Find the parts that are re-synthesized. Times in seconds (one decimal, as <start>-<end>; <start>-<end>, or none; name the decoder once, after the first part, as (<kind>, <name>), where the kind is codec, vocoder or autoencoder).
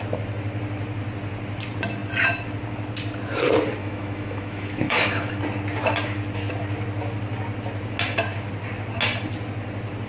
3.8-5.4 (autoencoder, DAC-VAE)